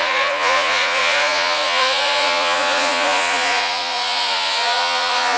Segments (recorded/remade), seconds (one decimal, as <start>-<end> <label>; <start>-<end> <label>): 0.0-5.4 remade